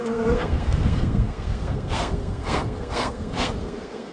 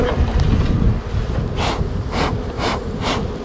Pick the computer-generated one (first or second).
first